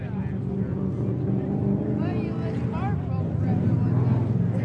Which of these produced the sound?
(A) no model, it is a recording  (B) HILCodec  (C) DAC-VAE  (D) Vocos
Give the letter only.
A